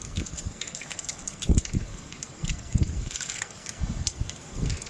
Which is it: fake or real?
fake